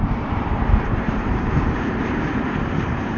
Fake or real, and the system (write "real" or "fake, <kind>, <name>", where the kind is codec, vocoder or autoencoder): fake, vocoder, BigVGAN v2